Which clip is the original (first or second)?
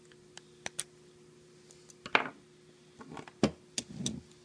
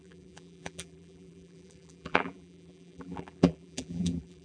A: first